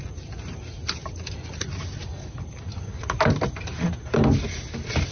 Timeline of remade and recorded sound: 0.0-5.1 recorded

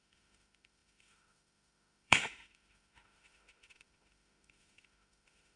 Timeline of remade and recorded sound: 0.0-5.6 remade